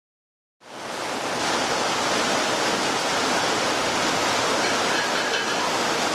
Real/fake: real